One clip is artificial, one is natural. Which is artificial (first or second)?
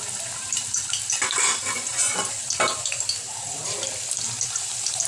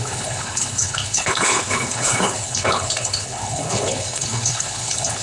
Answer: second